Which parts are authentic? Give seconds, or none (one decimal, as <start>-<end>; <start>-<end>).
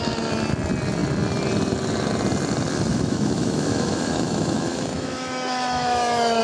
0.0-2.9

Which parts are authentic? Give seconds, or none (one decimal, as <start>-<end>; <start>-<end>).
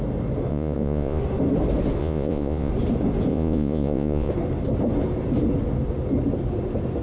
0.0-0.5; 1.2-2.0; 2.7-3.3; 4.3-7.0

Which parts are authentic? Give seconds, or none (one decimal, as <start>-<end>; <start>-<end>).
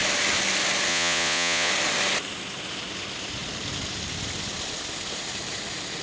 0.0-0.9; 1.7-6.0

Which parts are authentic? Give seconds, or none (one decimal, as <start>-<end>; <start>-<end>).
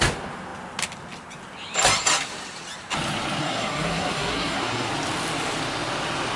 0.0-3.4; 4.9-6.4